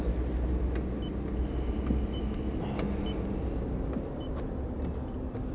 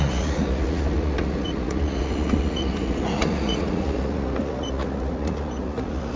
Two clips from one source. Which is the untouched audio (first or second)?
first